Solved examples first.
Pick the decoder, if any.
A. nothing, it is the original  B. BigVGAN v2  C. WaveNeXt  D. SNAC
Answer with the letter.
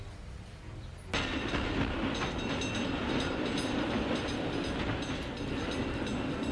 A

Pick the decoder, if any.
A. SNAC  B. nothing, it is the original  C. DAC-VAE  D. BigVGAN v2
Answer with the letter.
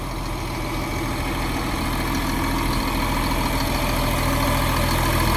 B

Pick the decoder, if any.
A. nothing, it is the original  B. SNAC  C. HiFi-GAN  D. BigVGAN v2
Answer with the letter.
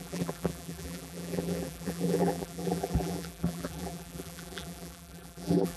D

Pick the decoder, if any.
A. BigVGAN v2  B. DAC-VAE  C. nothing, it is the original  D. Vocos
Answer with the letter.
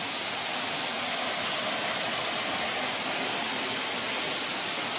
C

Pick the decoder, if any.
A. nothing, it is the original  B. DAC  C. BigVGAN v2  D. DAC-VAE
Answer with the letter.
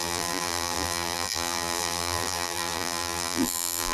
C